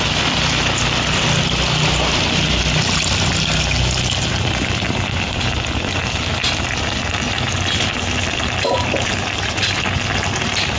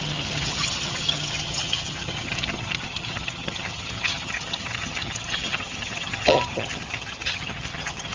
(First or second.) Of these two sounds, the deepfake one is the second